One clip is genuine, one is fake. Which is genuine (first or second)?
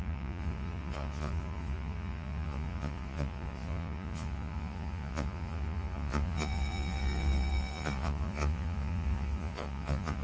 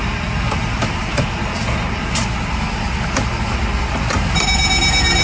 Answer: second